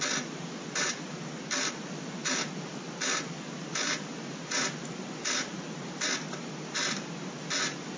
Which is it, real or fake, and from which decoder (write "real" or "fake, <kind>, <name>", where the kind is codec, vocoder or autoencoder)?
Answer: real